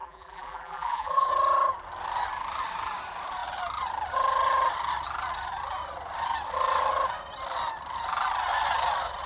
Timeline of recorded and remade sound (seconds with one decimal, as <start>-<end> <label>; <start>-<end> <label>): 0.0-1.3 remade; 1.3-9.3 recorded